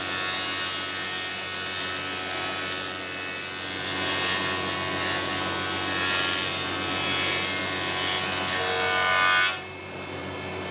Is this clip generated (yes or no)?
no